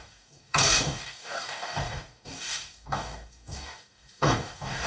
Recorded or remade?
remade